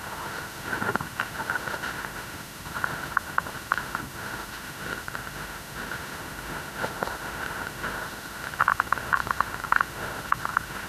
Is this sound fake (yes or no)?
yes